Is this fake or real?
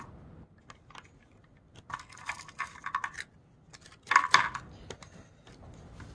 real